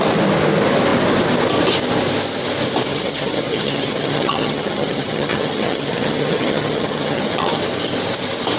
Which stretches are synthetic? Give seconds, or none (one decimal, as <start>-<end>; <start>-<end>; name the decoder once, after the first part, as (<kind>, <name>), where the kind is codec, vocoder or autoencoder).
2.9-7.6 (vocoder, HiFi-GAN)